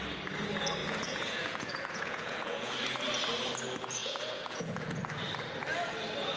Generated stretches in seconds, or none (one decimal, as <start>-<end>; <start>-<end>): 0.8-2.7; 4.0-5.0